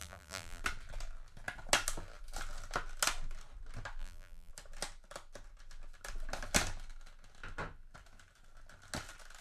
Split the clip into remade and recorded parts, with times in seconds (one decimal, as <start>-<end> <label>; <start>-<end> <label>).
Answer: 0.0-0.6 remade; 0.6-4.0 recorded; 4.0-4.5 remade; 4.5-9.4 recorded